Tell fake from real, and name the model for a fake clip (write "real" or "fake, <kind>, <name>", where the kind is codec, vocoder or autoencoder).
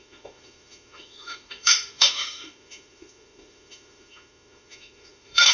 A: fake, autoencoder, DAC-VAE